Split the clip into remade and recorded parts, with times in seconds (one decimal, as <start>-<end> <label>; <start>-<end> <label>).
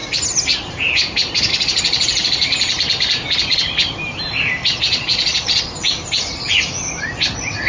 0.0-4.6 recorded; 4.6-5.7 remade; 5.7-7.7 recorded